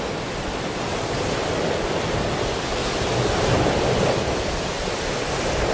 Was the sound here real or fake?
real